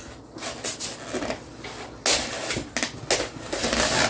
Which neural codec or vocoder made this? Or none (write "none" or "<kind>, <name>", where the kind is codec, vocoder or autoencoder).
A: none